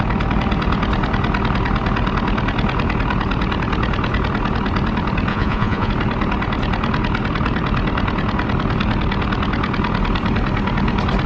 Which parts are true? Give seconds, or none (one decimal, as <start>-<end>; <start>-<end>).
0.0-5.3; 5.9-11.3